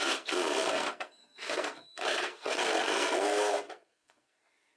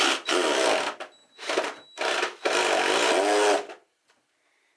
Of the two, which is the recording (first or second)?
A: second